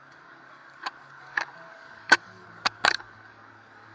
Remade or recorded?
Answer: remade